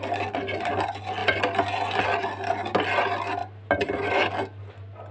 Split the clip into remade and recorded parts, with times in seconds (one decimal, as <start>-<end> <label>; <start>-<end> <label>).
0.0-5.1 recorded

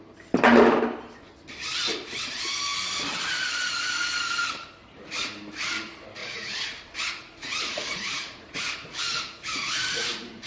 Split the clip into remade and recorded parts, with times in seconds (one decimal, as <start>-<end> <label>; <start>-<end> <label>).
0.0-6.2 recorded; 6.2-10.5 remade

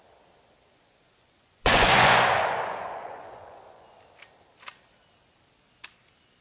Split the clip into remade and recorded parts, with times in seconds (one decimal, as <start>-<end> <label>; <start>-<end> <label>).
0.0-0.7 recorded; 0.7-4.0 remade; 4.0-6.4 recorded

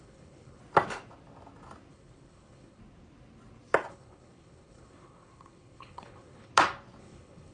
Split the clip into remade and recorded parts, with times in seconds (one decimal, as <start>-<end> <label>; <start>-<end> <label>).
0.0-0.6 remade; 0.6-1.9 recorded; 1.9-2.8 remade; 2.8-3.9 recorded; 3.9-6.5 remade; 6.5-7.0 recorded; 7.0-7.5 remade

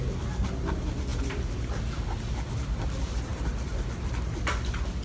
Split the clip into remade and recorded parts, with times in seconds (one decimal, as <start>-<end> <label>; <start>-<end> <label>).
0.0-5.0 recorded

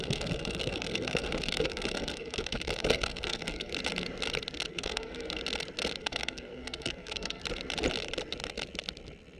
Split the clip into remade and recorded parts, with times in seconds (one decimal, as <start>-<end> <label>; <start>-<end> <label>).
0.0-3.7 remade; 3.7-4.7 recorded; 4.7-5.4 remade; 5.4-6.0 recorded; 6.0-7.4 remade; 7.4-9.4 recorded

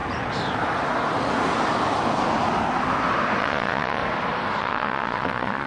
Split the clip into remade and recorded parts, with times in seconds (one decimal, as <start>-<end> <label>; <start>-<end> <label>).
0.0-3.4 recorded; 3.4-4.0 remade; 4.0-4.6 recorded; 4.6-5.7 remade